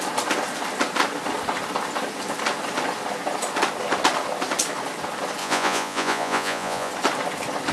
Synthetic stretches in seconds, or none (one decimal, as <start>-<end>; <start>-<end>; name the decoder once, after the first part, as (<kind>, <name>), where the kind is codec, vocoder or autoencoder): 5.4-6.9 (vocoder, Vocos)